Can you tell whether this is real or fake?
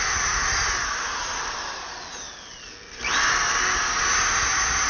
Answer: real